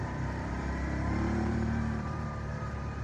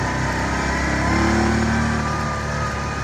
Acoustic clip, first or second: second